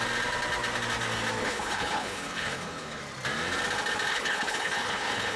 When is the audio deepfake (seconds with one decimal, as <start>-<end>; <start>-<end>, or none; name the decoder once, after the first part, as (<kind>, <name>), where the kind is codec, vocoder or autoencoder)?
1.4-3.0 (codec, HILCodec); 4.1-5.4